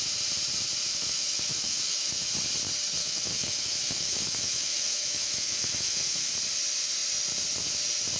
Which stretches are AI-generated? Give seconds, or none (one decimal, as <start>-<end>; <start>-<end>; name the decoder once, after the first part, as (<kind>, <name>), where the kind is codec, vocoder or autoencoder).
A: 0.9-2.3 (autoencoder, DAC-VAE); 3.0-6.3